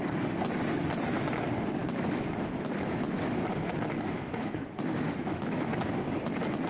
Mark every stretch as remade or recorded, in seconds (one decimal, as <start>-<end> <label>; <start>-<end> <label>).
0.0-1.8 recorded; 1.8-5.8 remade; 5.8-6.7 recorded

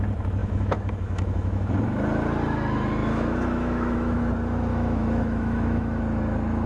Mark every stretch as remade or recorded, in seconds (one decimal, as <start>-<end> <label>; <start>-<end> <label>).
0.0-0.4 recorded; 0.4-1.7 remade; 1.7-3.0 recorded; 3.0-4.2 remade; 4.2-4.7 recorded; 4.7-6.0 remade; 6.0-6.7 recorded

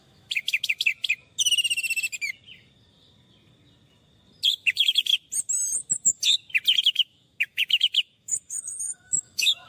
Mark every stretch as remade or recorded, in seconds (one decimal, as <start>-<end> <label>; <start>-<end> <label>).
0.0-0.9 remade; 0.9-4.5 recorded; 4.5-5.1 remade; 5.1-6.8 recorded; 6.8-9.7 remade

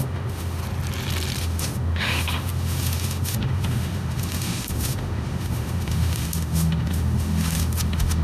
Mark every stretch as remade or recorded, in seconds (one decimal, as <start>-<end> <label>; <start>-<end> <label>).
0.0-0.6 remade; 0.6-1.4 recorded; 1.4-8.2 remade